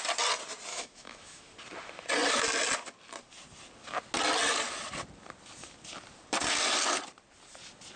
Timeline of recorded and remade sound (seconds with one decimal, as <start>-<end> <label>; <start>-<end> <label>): 0.0-0.7 recorded; 0.7-1.5 remade; 1.5-8.0 recorded